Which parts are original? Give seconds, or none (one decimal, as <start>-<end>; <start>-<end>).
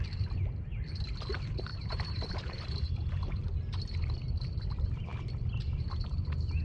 0.0-1.7; 4.1-6.6